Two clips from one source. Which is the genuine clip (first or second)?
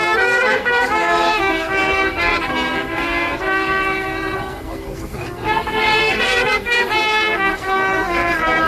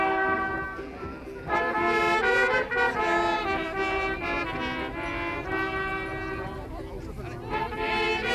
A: second